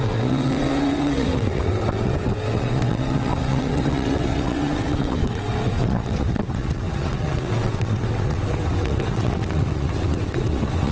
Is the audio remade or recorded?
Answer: remade